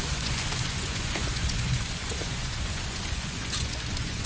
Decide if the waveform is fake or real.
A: fake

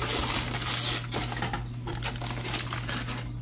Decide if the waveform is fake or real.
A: real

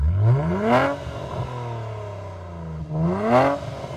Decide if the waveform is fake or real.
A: real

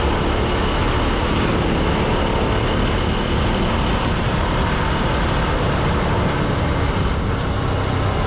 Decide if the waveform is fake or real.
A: real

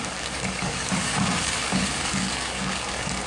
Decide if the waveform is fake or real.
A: fake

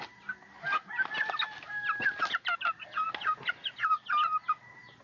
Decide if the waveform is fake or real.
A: real